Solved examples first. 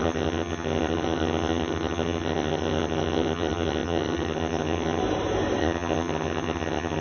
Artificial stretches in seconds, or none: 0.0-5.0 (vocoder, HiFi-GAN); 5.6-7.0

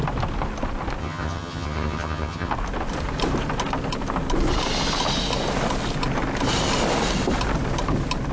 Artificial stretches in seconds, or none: 1.0-2.5 (vocoder, HiFi-GAN)

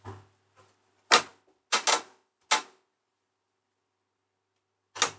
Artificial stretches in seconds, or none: none

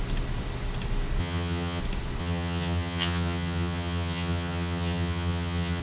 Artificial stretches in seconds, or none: 1.2-1.8 (vocoder, HiFi-GAN); 2.2-5.8